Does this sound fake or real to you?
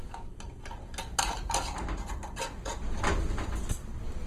real